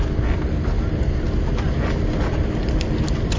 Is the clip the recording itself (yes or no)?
yes